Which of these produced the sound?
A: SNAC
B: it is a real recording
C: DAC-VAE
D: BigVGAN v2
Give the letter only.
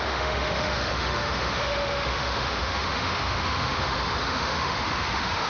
C